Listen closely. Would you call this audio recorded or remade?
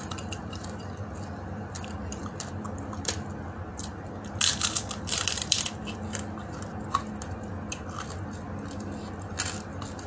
recorded